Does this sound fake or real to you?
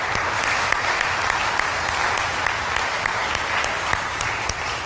real